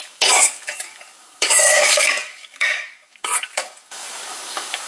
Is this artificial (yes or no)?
yes